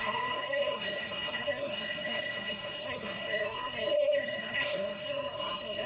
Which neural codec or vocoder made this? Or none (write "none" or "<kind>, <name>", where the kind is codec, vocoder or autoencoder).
codec, SNAC